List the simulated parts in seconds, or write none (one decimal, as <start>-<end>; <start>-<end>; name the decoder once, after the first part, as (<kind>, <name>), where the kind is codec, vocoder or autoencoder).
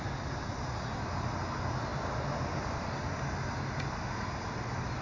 none